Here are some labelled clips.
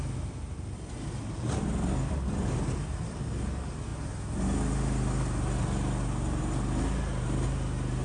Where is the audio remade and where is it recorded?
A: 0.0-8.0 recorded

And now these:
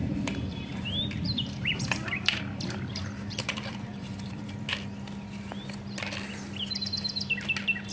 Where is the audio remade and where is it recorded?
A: 0.0-4.7 remade; 4.7-7.9 recorded

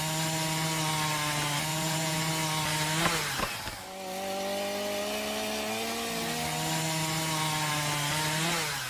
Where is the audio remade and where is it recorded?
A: 0.0-1.7 recorded; 1.7-2.2 remade; 2.2-8.9 recorded